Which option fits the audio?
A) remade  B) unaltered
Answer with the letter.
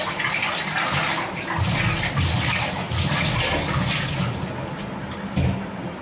B